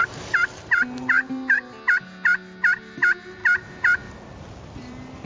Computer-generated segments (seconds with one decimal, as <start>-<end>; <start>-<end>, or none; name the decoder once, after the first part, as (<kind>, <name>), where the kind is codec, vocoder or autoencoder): none